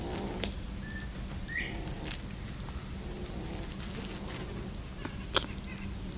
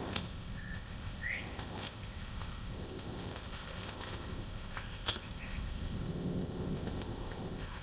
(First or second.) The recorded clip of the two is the first